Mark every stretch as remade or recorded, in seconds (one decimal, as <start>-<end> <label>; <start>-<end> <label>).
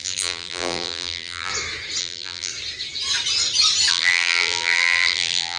0.0-1.5 remade; 1.5-2.0 recorded; 2.0-2.5 remade; 2.5-3.9 recorded; 3.9-5.6 remade